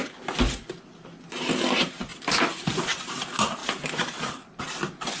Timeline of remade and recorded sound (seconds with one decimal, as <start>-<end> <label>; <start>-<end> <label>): 0.0-2.1 recorded; 2.1-3.0 remade; 3.0-3.6 recorded; 3.6-4.6 remade; 4.6-5.2 recorded